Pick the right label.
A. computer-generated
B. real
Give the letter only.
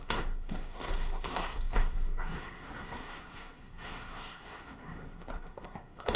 A